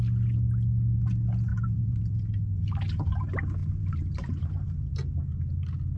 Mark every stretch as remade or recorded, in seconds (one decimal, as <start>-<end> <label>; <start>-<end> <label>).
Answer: 0.0-1.5 recorded; 1.5-3.1 remade; 3.1-3.6 recorded; 3.6-4.9 remade; 4.9-6.0 recorded